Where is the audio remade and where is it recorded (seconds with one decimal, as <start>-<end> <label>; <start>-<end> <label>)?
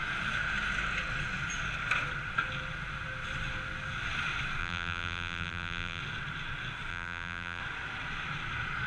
0.0-4.6 recorded; 4.6-6.0 remade; 6.0-6.9 recorded; 6.9-7.6 remade; 7.6-8.9 recorded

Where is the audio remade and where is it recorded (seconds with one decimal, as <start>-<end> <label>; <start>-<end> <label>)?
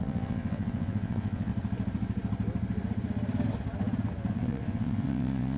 0.0-1.5 remade; 1.5-4.3 recorded; 4.3-5.6 remade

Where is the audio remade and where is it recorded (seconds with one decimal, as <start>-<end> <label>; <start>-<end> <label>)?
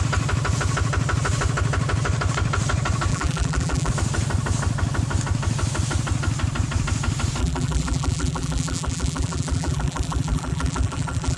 0.0-3.1 recorded; 3.1-3.9 remade; 3.9-7.4 recorded; 7.4-11.4 remade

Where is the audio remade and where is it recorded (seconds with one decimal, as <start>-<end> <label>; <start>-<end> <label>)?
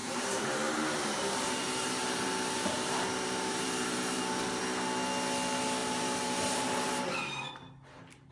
0.0-4.6 remade; 4.6-5.8 recorded; 5.8-7.5 remade; 7.5-8.3 recorded